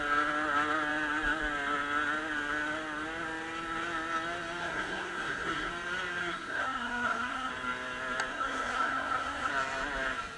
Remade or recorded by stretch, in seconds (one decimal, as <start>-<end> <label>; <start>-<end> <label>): 0.0-4.6 recorded; 4.6-5.7 remade; 5.7-6.2 recorded; 6.2-7.5 remade; 7.5-8.3 recorded; 8.3-9.5 remade; 9.5-10.4 recorded